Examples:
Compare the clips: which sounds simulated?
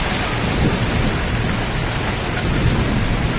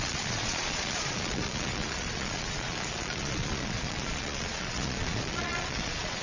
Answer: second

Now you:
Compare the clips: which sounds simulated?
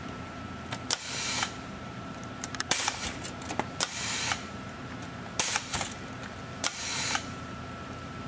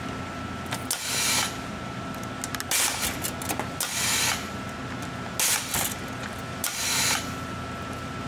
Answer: first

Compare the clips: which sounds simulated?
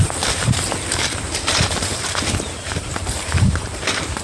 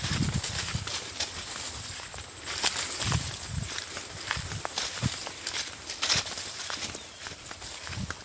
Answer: first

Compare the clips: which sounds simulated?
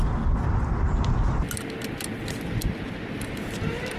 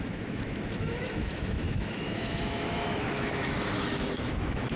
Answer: second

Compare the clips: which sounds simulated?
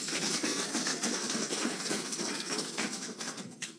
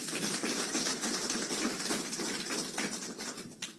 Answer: first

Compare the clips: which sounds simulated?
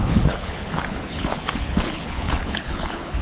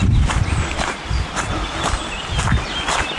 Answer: first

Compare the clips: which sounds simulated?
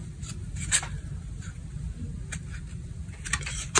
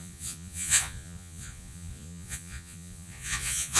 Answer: second